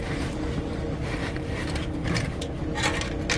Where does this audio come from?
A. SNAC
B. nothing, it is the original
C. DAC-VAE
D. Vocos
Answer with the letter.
B